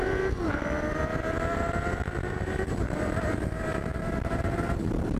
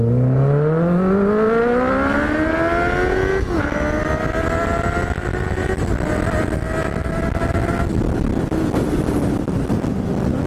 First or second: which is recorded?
second